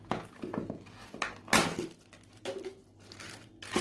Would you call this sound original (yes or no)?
yes